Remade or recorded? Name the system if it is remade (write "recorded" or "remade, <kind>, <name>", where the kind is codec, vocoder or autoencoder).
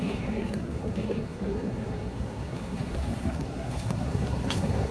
remade, codec, SNAC